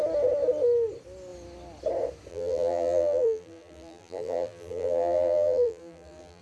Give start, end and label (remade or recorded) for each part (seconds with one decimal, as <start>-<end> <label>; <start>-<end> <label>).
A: 0.0-2.3 recorded; 2.3-6.4 remade